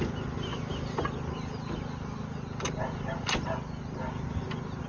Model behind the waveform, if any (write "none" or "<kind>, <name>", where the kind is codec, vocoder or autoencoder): none